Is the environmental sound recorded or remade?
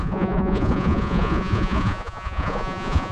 remade